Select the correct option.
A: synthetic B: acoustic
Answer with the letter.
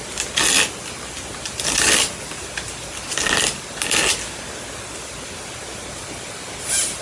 B